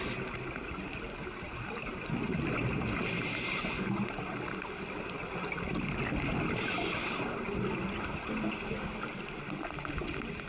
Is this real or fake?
real